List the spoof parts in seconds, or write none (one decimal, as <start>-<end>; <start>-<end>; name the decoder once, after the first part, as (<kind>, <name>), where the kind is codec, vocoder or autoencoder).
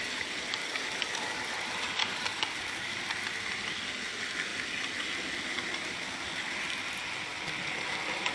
0.6-1.4 (codec, DAC); 2.0-3.0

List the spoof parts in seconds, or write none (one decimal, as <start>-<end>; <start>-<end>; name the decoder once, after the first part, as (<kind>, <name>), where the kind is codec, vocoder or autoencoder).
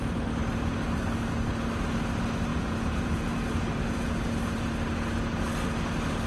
2.5-4.3 (vocoder, Vocos)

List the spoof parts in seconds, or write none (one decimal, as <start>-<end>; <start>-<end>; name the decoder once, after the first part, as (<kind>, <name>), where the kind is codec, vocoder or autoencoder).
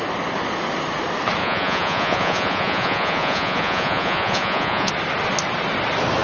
1.4-4.9 (vocoder, Vocos)